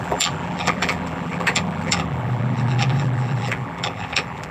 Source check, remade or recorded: remade